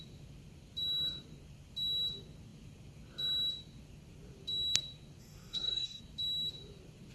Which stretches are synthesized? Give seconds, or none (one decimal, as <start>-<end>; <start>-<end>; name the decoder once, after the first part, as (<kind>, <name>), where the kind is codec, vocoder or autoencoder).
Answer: 5.2-6.0 (codec, SNAC)